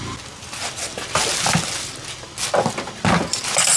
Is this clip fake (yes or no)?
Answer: no